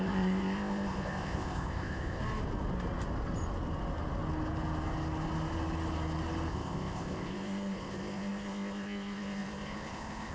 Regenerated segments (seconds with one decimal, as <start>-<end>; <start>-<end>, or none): 0.0-2.2; 6.5-10.3